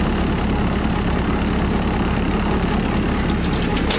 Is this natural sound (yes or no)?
yes